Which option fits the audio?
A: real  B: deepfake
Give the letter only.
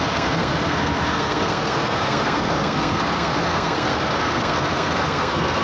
B